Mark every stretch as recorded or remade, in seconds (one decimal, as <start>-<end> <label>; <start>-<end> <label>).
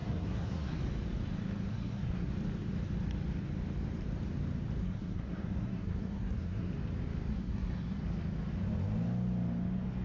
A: 0.0-0.8 remade; 0.8-1.7 recorded; 1.7-2.3 remade; 2.3-4.8 recorded; 4.8-6.7 remade; 6.7-7.3 recorded; 7.3-8.0 remade; 8.0-10.0 recorded